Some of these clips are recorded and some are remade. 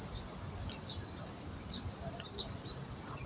recorded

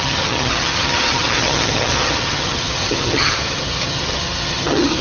remade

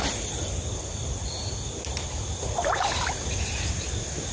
recorded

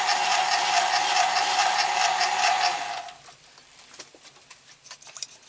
recorded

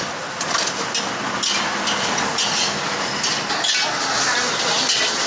recorded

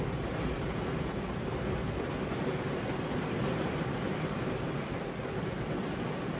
recorded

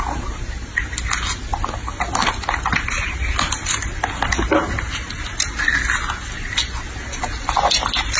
recorded